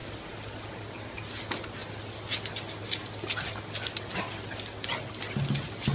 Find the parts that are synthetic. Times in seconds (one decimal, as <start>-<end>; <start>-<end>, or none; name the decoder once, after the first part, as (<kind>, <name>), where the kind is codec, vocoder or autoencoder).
none